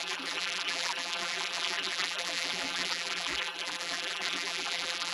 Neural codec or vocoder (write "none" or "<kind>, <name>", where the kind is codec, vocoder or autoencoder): vocoder, BigVGAN v2